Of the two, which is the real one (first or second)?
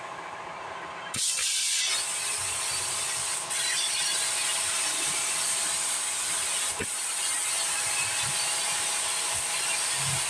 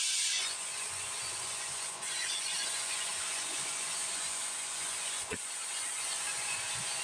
first